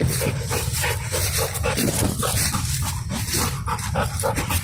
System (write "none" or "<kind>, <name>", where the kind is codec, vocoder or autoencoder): vocoder, BigVGAN v2